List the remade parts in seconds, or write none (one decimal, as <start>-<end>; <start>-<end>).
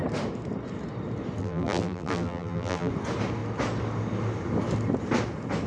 1.4-2.9